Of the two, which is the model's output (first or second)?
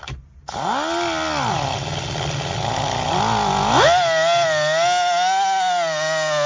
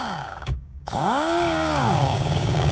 second